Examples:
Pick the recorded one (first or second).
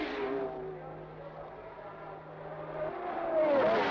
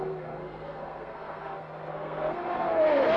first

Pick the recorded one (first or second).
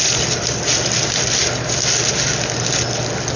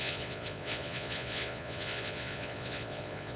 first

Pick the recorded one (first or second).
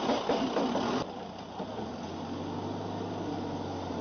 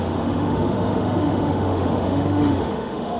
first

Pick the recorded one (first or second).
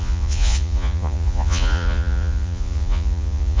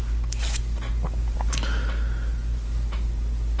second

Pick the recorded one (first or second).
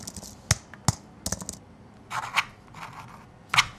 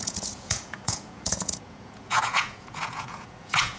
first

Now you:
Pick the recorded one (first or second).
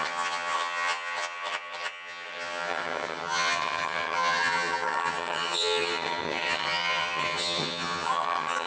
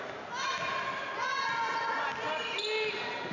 second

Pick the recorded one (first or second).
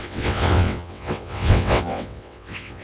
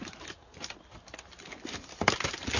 second